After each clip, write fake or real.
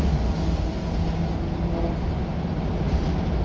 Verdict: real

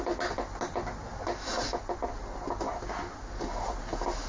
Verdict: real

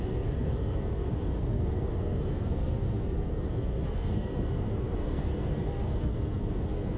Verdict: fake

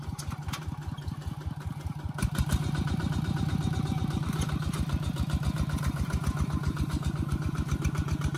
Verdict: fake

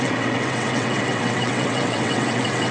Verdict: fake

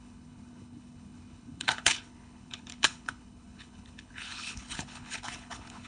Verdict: fake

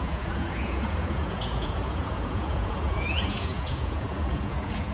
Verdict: fake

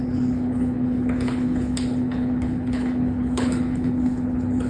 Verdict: fake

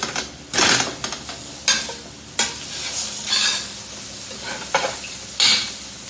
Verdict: real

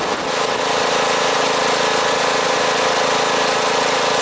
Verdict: real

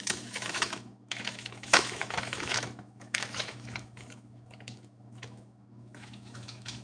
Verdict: fake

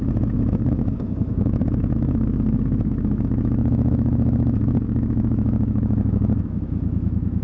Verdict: fake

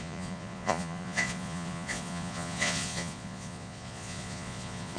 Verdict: fake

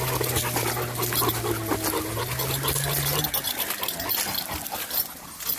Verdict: real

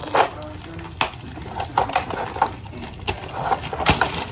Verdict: real